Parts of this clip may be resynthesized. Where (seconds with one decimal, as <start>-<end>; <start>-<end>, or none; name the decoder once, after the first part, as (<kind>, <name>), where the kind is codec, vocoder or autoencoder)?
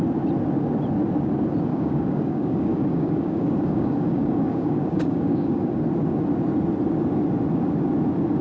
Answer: 1.7-5.8 (codec, DAC)